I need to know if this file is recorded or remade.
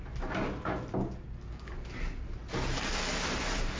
recorded